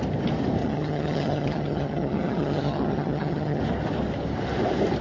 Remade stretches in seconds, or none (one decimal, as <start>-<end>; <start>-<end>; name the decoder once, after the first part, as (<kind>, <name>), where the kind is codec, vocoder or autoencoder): 0.6-3.6 (vocoder, HiFi-GAN)